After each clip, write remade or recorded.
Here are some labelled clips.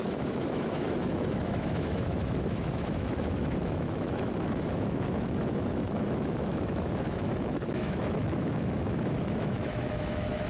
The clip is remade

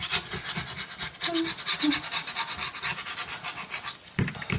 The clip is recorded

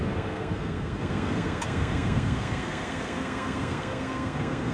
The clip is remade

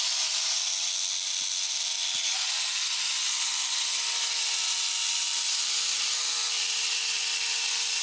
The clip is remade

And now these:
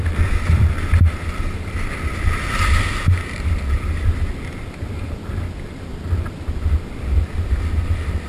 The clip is recorded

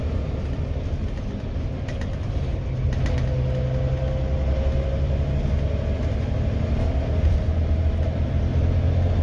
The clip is recorded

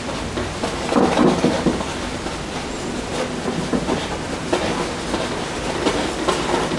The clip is recorded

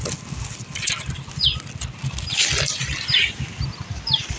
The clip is recorded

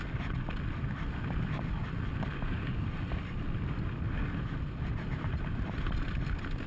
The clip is recorded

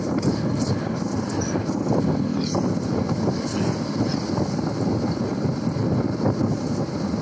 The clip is recorded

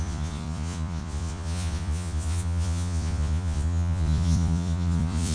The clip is remade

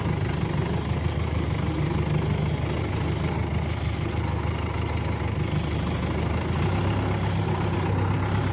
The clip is recorded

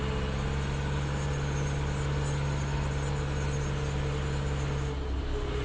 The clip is recorded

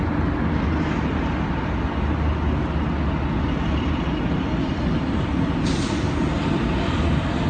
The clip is recorded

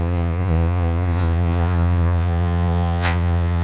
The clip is remade